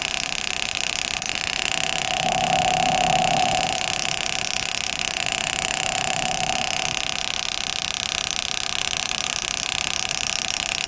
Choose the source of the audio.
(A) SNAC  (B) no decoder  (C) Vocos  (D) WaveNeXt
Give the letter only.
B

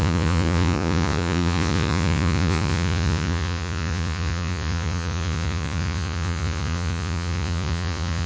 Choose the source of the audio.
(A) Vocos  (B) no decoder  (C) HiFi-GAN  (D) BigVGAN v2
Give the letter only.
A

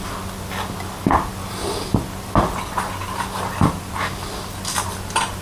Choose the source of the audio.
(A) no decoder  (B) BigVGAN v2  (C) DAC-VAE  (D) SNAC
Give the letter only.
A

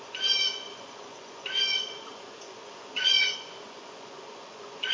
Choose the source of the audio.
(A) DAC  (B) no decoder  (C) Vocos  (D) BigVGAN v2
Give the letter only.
C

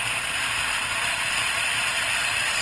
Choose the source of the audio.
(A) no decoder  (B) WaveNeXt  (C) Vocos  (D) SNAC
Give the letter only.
A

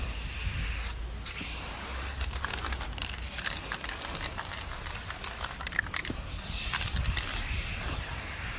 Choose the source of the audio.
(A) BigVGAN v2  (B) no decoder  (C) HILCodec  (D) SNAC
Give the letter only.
B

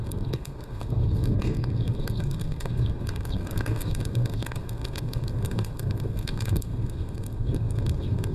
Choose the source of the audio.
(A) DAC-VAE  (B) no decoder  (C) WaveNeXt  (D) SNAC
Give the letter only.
D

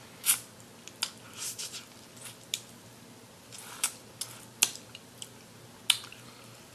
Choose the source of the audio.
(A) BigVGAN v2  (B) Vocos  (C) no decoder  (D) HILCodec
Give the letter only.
C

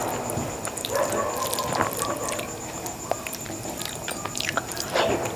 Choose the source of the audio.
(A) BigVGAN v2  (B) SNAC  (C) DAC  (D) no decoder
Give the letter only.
D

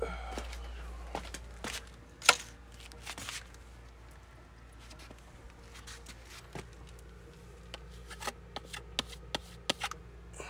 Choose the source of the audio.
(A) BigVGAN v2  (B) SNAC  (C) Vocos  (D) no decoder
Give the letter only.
D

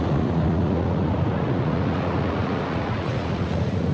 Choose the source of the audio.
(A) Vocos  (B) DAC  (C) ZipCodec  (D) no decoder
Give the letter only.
A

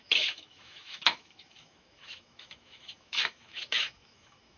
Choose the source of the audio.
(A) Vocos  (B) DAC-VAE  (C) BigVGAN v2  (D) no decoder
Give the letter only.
B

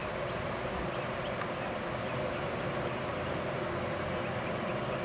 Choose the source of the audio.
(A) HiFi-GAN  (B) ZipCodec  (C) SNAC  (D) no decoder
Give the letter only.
D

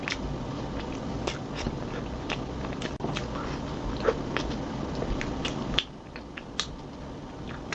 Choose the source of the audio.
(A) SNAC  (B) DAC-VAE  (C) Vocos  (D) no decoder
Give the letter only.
D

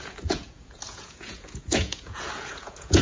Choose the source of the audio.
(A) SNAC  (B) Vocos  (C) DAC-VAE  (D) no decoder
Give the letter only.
B